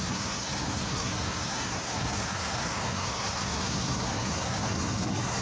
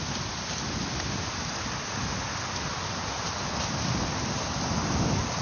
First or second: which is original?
second